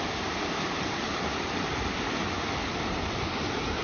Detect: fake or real real